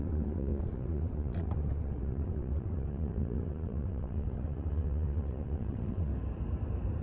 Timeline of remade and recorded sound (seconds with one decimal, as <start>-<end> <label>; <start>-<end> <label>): 0.0-6.1 remade; 6.1-7.0 recorded